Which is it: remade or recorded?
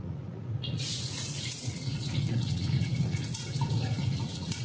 remade